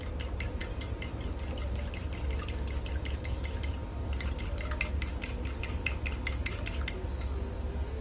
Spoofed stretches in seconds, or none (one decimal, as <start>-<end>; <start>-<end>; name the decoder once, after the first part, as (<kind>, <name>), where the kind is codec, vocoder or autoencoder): none